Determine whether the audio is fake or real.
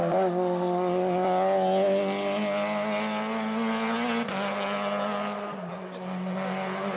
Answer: real